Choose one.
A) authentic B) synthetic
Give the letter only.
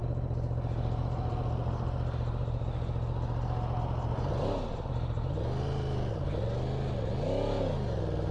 A